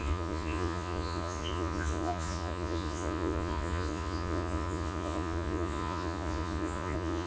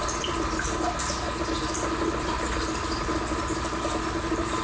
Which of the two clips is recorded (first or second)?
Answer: second